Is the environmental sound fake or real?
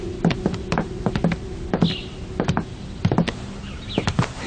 real